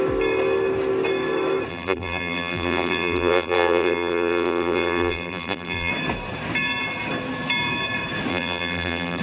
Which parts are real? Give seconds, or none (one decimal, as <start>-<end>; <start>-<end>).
0.0-1.7; 5.9-8.3